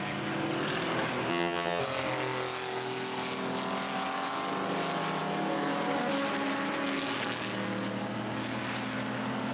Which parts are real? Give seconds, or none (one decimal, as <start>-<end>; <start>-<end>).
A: 0.0-1.3; 1.8-9.5